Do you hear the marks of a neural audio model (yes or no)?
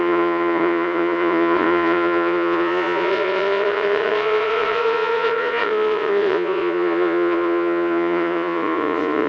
yes